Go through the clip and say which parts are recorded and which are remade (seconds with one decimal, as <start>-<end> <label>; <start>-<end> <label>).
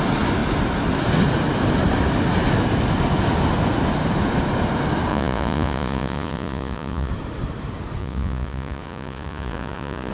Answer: 0.0-5.1 recorded; 5.1-7.1 remade; 7.1-8.0 recorded; 8.0-10.1 remade